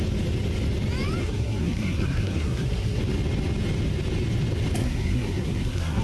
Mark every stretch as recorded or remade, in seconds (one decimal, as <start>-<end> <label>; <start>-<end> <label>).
0.0-1.2 recorded; 1.2-3.0 remade; 3.0-4.8 recorded; 4.8-6.0 remade